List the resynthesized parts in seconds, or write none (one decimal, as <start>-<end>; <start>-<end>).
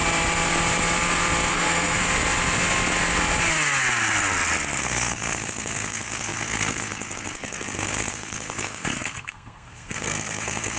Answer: 1.5-2.0; 4.8-10.8